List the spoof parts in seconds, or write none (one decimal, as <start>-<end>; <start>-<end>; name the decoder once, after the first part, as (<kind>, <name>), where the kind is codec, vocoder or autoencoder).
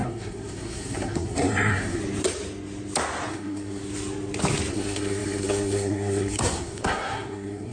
0.0-2.0 (codec, SNAC); 3.3-3.8; 4.7-7.7